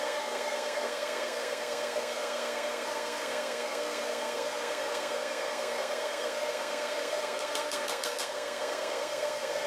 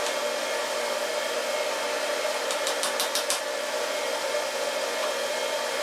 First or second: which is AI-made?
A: first